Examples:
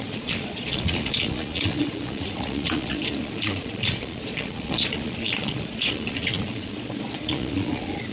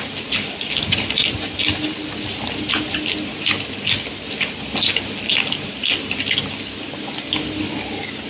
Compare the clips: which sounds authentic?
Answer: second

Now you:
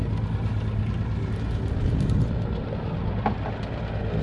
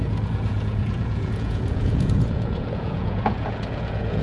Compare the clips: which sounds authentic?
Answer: first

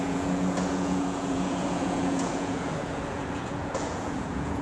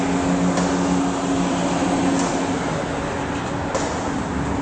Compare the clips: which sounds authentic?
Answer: second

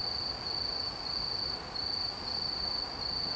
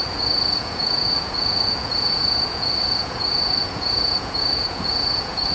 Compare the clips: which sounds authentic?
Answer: first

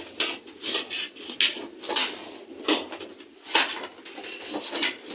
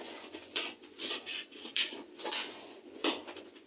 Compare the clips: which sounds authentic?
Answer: first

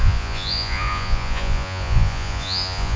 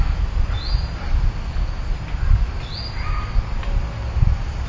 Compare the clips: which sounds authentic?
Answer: second